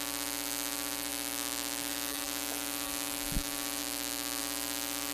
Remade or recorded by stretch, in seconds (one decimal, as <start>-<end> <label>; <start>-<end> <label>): 0.0-5.1 remade